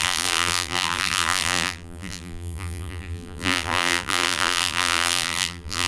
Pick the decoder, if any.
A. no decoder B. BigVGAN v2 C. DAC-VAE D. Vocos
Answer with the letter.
B